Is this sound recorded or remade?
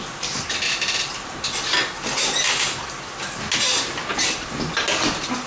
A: recorded